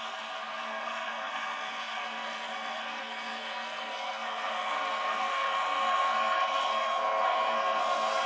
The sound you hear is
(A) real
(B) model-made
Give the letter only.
B